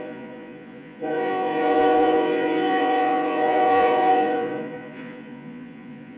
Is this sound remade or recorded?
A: remade